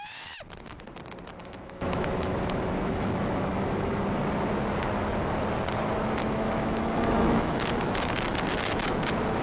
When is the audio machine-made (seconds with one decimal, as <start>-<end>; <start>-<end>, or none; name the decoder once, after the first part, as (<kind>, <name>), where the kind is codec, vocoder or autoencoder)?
1.4-4.0 (autoencoder, DAC-VAE); 6.2-9.0